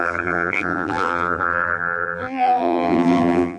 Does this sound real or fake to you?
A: fake